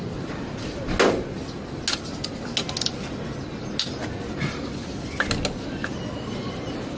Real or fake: real